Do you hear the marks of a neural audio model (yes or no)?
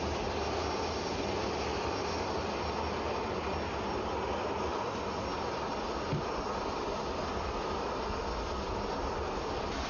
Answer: no